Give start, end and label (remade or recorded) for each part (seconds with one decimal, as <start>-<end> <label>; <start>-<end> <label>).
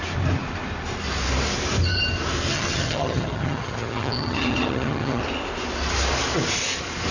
0.0-2.5 recorded; 2.5-5.2 remade; 5.2-7.1 recorded